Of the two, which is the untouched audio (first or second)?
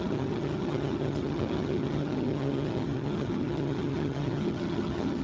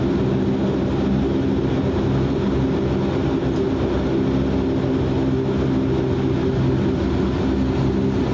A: second